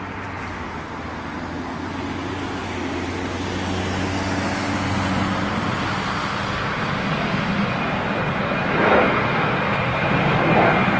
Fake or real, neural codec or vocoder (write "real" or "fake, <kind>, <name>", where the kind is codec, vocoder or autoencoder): real